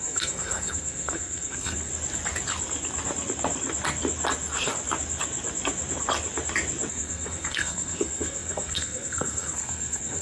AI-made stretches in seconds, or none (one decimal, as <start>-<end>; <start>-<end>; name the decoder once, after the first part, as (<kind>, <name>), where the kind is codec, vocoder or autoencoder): 0.0-1.9 (codec, SNAC); 6.9-10.2

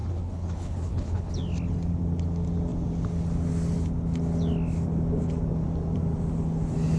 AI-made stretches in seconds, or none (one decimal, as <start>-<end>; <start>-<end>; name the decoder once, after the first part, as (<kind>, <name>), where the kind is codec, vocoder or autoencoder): 0.0-1.3 (codec, HILCodec)

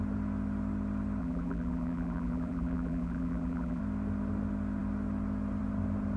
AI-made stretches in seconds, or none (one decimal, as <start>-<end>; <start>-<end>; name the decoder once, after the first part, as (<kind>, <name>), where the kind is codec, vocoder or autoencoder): 1.2-3.8 (vocoder, BigVGAN v2)

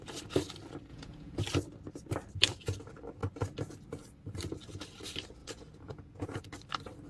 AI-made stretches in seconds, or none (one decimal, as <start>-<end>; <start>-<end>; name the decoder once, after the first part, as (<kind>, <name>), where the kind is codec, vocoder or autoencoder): 0.9-1.4 (vocoder, Vocos); 5.4-6.4

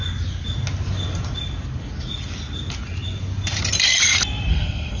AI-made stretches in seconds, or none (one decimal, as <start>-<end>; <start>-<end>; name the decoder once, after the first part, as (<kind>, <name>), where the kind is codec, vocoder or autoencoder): 4.5-5.0 (codec, SNAC)

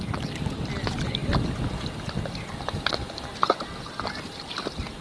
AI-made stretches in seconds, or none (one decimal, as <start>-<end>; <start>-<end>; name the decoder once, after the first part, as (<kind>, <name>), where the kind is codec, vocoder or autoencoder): 3.4-4.0 (vocoder, BigVGAN v2)